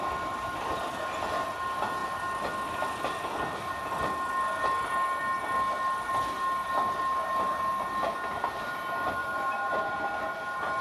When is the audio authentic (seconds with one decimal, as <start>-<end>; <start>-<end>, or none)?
0.0-9.2; 9.9-10.8